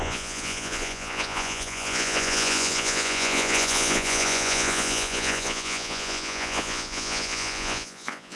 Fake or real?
fake